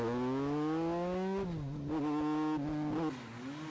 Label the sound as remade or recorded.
recorded